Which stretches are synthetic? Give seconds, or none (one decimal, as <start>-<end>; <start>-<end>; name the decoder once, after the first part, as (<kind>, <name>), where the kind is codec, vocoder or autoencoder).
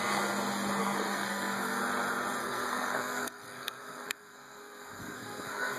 0.8-1.8 (codec, SNAC); 2.4-5.8